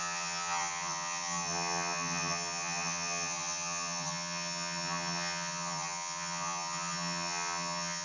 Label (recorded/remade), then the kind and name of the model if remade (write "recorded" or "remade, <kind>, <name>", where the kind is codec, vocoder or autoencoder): remade, vocoder, HiFi-GAN